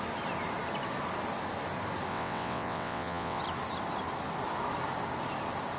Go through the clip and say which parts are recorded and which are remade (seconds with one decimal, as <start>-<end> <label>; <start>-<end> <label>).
0.0-2.1 recorded; 2.1-3.4 remade; 3.4-5.8 recorded